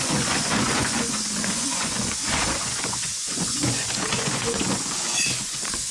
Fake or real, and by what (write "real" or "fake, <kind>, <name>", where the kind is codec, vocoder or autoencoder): fake, vocoder, Vocos